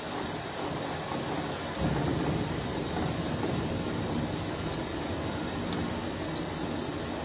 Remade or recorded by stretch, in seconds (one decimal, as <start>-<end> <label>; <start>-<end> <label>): 0.0-2.1 recorded; 2.1-3.7 remade; 3.7-7.2 recorded